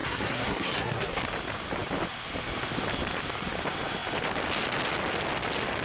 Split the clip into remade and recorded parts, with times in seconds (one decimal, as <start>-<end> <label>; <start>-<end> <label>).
0.0-1.2 remade; 1.2-5.8 recorded